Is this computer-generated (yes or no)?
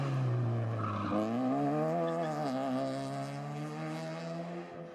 no